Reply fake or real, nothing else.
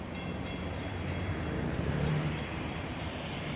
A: fake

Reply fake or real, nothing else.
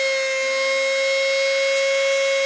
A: real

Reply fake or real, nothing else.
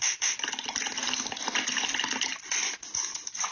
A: fake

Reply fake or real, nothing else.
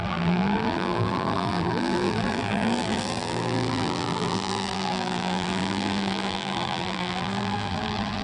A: fake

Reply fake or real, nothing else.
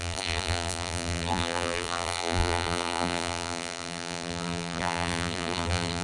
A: fake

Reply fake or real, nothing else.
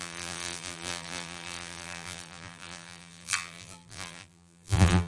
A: fake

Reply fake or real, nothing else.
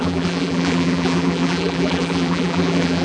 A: fake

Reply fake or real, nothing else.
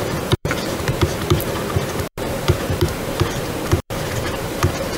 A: fake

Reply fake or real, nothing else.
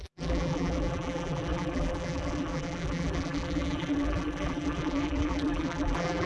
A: fake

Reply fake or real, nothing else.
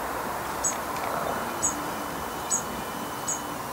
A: real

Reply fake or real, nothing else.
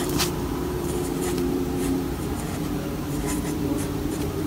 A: fake